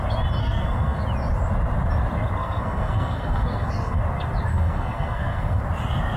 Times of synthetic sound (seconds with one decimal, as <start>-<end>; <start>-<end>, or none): 0.4-1.0; 2.4-4.0; 4.5-5.6